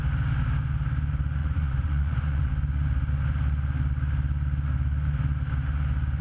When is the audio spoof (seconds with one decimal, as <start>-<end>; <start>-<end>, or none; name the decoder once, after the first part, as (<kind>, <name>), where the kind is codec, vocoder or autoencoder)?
1.4-2.5 (vocoder, Vocos)